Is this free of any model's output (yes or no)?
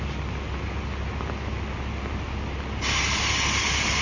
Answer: yes